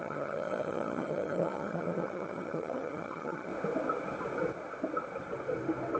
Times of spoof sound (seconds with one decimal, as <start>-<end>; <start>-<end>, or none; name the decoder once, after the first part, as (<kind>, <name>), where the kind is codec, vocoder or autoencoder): 0.0-3.5 (vocoder, HiFi-GAN)